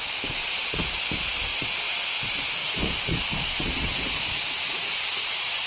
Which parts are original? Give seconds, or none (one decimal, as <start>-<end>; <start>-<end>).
0.0-0.4; 1.0-2.6